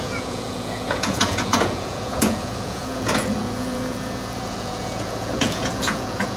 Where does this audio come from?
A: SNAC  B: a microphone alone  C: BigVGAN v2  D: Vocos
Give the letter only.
D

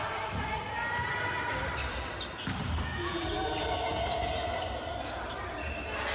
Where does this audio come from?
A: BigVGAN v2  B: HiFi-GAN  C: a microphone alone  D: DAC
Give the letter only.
C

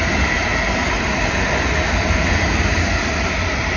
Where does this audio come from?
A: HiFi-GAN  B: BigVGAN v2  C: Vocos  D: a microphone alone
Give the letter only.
D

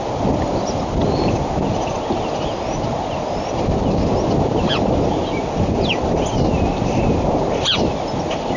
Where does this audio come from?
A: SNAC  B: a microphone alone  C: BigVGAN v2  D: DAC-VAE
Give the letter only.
B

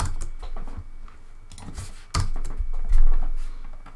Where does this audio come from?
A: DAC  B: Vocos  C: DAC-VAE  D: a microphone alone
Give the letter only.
D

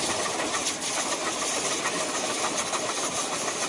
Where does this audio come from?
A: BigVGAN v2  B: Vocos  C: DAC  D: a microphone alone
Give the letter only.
D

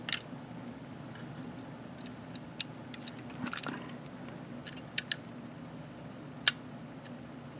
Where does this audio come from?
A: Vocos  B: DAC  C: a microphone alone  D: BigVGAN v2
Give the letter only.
C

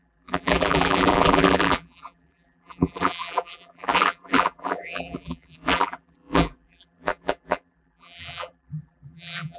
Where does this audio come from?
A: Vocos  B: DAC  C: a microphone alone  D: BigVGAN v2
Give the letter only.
D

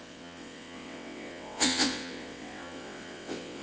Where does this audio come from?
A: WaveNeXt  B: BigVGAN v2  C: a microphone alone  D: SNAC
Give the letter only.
A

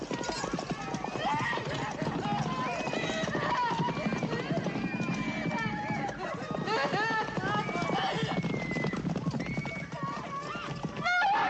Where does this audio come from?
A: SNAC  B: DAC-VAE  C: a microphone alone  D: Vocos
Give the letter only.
C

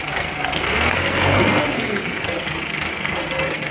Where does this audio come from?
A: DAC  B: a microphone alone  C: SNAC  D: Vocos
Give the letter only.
C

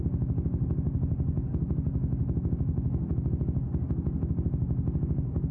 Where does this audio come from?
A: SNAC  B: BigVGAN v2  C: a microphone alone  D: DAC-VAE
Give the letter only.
C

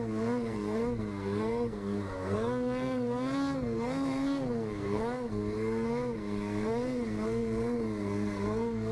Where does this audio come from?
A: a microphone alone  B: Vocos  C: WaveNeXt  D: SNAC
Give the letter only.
D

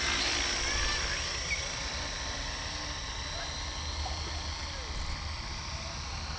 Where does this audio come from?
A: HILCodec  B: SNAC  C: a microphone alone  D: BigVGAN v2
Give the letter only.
C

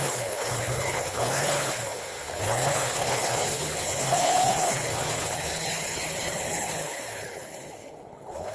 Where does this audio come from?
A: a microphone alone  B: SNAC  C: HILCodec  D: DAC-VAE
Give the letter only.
C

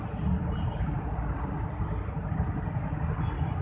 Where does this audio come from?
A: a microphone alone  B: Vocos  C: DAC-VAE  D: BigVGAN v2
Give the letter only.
A